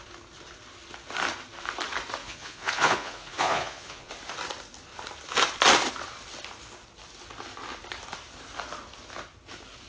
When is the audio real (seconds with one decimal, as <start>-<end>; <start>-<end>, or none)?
0.0-2.2; 4.1-9.9